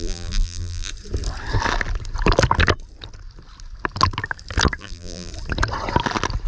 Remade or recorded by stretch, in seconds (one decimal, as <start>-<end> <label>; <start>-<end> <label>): 0.0-0.9 remade; 0.9-4.8 recorded; 4.8-5.3 remade; 5.3-6.5 recorded